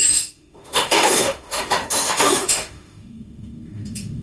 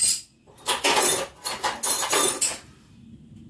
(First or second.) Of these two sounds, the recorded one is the second